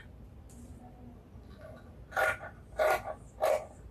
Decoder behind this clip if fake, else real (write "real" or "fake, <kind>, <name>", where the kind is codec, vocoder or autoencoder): real